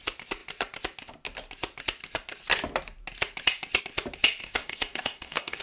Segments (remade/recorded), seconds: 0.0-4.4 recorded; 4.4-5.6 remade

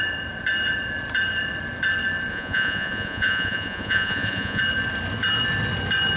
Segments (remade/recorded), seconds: 0.0-2.3 recorded; 2.3-4.6 remade; 4.6-6.2 recorded

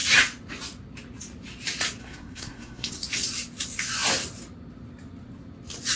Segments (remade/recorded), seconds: 0.0-2.0 recorded; 2.0-2.9 remade; 2.9-6.0 recorded

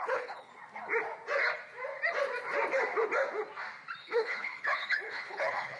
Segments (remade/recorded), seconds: 0.0-0.5 remade; 0.5-4.0 recorded; 4.0-5.8 remade

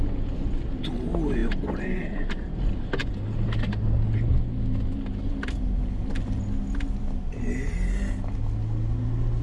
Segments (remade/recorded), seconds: 0.0-9.4 recorded

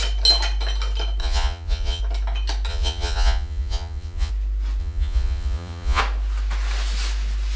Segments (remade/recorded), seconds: 0.0-1.2 recorded; 1.2-2.0 remade; 2.0-2.7 recorded; 2.7-4.3 remade; 4.3-4.8 recorded; 4.8-6.0 remade; 6.0-7.6 recorded

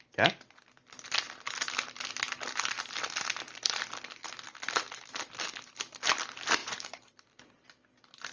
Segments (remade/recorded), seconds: 0.0-6.6 recorded; 6.6-7.4 remade; 7.4-8.3 recorded